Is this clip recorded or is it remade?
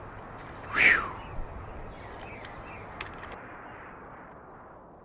recorded